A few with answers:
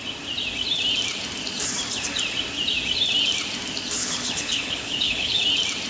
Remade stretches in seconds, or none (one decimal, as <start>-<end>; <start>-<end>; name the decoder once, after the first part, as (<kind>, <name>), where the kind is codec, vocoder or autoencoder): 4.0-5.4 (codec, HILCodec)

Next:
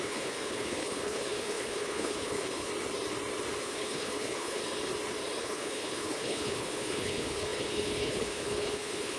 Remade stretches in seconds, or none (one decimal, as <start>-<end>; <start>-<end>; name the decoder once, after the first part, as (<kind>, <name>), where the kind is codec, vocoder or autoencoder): 0.0-2.7 (codec, HILCodec); 3.6-4.6; 5.4-9.2

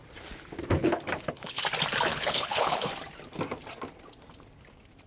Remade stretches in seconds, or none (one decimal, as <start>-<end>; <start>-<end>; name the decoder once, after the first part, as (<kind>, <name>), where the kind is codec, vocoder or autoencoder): 0.8-1.6 (codec, HILCodec); 2.1-2.9